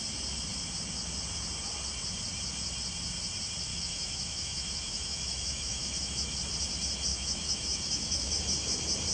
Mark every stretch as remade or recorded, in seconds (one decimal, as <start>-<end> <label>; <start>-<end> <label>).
0.0-3.7 recorded; 3.7-6.4 remade; 6.4-7.1 recorded; 7.1-8.4 remade; 8.4-9.1 recorded